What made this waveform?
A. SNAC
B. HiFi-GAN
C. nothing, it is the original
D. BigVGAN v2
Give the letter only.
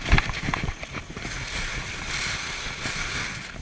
C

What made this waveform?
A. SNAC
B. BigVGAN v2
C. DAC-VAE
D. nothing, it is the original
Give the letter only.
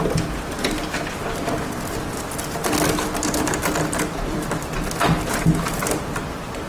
D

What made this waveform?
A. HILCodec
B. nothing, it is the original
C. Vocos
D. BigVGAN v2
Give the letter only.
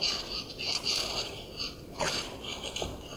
B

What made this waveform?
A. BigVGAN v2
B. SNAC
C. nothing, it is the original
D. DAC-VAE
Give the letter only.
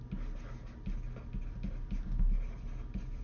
C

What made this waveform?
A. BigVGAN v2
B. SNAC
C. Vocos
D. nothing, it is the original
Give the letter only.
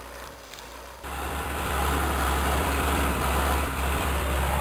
A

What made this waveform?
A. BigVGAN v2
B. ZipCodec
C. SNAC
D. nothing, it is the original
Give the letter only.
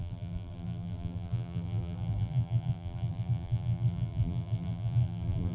A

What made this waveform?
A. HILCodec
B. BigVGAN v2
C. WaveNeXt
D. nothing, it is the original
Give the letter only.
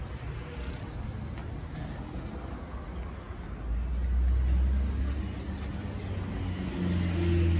D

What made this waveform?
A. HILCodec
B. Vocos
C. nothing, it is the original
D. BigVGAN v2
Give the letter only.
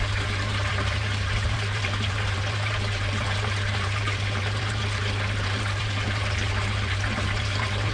D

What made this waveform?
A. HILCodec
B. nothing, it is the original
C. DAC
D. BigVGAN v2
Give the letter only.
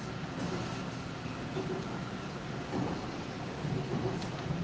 B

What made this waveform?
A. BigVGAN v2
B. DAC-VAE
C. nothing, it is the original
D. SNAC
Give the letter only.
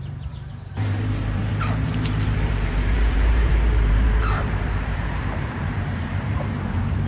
A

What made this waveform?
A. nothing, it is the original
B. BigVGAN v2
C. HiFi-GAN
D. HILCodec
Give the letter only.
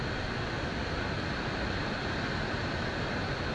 A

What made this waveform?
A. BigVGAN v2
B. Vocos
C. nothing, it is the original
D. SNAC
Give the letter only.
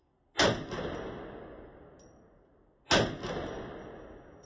C